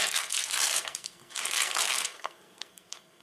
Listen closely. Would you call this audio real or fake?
fake